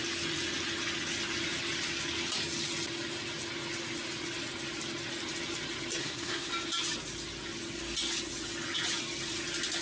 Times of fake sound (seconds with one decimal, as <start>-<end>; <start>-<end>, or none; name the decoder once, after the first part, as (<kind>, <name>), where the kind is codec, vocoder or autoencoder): 6.0-6.5 (codec, SNAC)